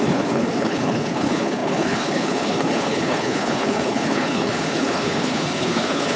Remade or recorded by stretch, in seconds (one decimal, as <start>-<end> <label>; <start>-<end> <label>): 0.0-6.2 remade

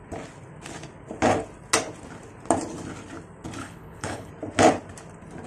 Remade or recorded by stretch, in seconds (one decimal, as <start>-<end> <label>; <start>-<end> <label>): 0.0-3.6 recorded; 3.6-4.3 remade; 4.3-5.5 recorded

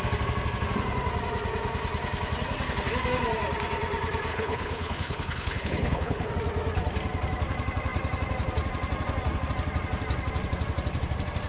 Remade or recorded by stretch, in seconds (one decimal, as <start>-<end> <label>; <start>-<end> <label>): 0.0-4.3 recorded; 4.3-6.3 remade; 6.3-11.5 recorded

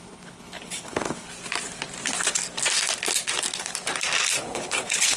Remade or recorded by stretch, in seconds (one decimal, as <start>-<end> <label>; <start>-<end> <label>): 0.0-1.3 remade; 1.3-4.4 recorded; 4.4-5.2 remade

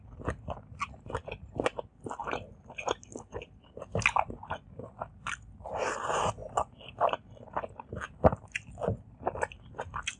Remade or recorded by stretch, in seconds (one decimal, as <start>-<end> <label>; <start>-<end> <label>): 0.0-10.2 recorded